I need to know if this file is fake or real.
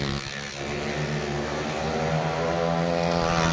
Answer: real